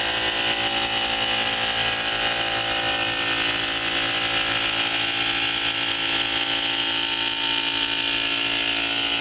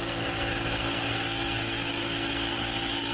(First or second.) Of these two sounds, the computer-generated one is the second